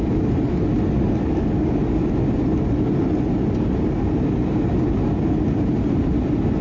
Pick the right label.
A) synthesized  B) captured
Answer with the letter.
B